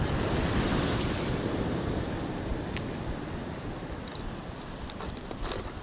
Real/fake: fake